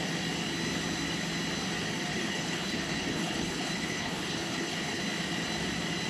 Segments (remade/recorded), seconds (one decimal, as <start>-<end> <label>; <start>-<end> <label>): 0.0-2.1 recorded; 2.1-5.0 remade; 5.0-6.1 recorded